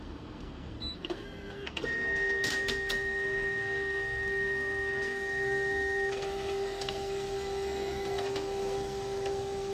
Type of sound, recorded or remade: remade